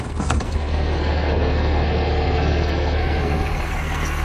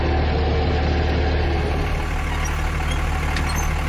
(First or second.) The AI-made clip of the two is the first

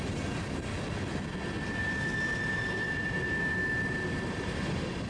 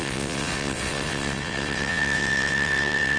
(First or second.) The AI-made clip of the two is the second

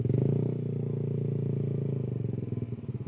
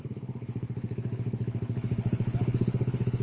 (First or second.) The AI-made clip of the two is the second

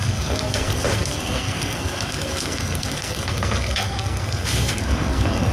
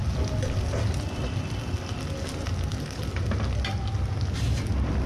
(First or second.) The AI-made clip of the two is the first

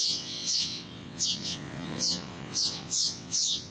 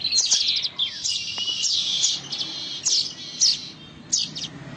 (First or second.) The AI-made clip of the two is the first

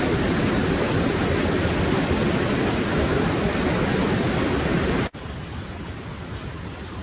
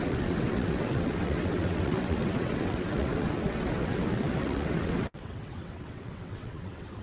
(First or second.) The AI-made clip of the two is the second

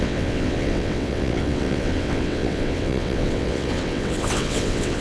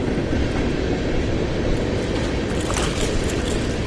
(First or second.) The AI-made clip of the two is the first